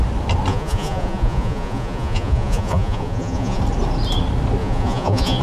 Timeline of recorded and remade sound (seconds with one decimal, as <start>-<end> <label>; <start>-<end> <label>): 0.0-0.5 recorded; 0.5-3.6 remade; 3.6-4.6 recorded; 4.6-5.4 remade